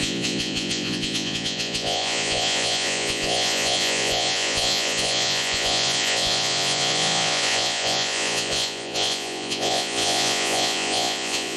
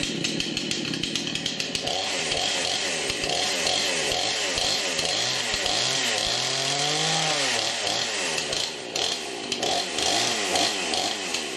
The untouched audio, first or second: second